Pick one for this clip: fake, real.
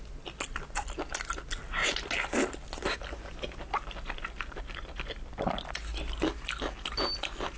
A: real